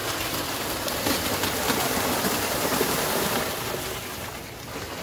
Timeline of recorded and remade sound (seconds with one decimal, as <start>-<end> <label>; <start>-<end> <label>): 0.0-5.0 recorded